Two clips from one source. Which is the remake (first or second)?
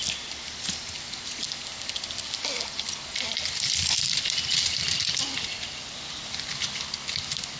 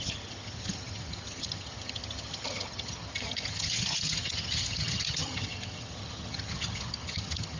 second